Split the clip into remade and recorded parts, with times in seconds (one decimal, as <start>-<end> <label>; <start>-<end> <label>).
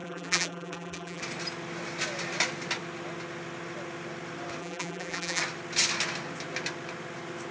0.0-1.2 remade; 1.2-4.6 recorded; 4.6-5.4 remade; 5.4-7.5 recorded